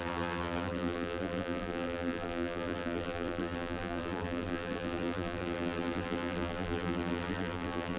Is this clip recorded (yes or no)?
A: no